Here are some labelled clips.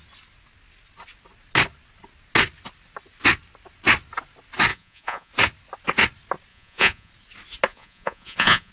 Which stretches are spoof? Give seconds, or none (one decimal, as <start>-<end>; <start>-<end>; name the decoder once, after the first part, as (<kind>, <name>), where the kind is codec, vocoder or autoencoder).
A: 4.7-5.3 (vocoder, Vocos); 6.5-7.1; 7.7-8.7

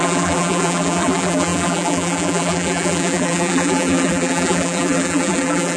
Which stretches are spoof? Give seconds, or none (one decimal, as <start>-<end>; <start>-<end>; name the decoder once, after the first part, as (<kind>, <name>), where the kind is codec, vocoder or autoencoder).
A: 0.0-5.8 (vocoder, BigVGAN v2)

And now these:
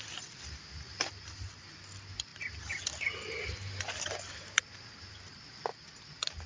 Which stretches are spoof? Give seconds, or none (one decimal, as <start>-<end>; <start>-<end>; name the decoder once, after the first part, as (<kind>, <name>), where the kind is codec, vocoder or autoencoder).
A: none